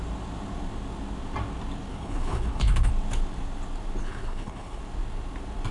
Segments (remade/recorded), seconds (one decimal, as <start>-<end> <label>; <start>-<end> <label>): 0.0-1.9 recorded; 1.9-2.9 remade; 2.9-4.0 recorded; 4.0-4.8 remade; 4.8-5.7 recorded